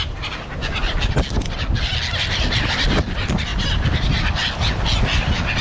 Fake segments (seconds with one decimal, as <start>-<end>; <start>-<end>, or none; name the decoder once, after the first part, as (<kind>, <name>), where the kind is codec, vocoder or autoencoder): none